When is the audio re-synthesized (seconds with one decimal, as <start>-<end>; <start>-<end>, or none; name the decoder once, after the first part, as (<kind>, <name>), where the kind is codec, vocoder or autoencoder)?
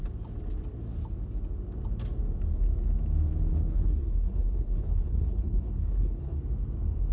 3.5-6.4 (codec, HILCodec)